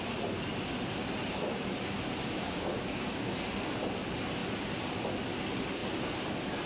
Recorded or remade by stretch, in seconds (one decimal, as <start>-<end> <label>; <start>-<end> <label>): 0.0-2.2 recorded; 2.2-3.3 remade; 3.3-6.7 recorded